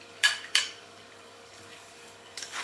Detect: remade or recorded remade